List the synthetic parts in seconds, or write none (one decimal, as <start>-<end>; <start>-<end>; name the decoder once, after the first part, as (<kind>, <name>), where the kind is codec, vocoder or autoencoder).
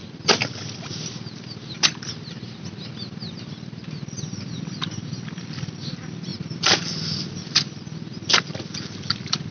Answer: none